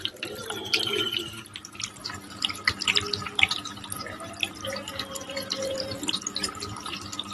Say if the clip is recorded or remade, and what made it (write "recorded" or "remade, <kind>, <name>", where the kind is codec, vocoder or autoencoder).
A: remade, vocoder, BigVGAN v2